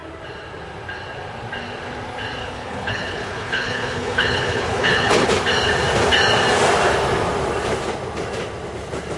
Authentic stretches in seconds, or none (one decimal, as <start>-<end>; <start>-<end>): 0.0-2.4; 5.3-9.2

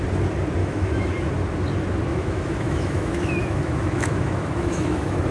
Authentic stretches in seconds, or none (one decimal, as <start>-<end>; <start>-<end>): 0.0-0.6; 1.1-2.1

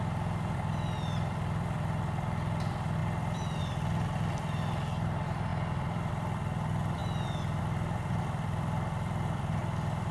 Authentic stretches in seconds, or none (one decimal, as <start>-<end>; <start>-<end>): none

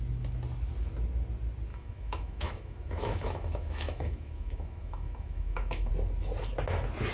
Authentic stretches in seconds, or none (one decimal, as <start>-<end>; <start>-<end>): 0.0-1.7; 5.9-7.1

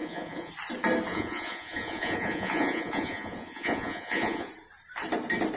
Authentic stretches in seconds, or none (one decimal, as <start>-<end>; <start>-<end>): 0.5-1.1; 4.5-5.6

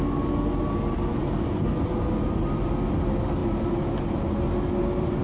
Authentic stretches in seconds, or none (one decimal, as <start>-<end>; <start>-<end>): 0.0-5.2

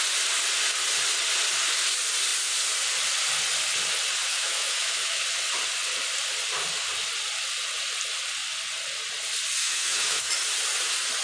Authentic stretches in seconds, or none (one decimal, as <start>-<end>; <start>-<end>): 0.0-4.3; 5.2-9.6; 10.3-11.2

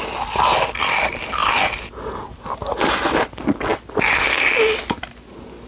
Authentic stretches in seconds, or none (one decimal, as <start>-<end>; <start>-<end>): 0.0-5.7